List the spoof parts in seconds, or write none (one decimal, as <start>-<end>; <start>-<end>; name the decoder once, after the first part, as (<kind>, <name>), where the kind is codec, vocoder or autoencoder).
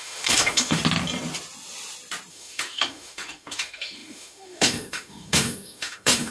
0.0-0.8 (autoencoder, DAC-VAE); 2.3-6.3